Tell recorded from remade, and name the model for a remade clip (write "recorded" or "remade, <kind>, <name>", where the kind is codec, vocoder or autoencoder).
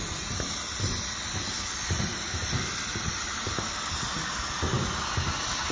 recorded